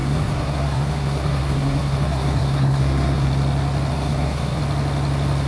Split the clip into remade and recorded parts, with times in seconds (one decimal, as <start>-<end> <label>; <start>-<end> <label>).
0.0-3.3 remade; 3.3-3.9 recorded; 3.9-4.6 remade; 4.6-5.5 recorded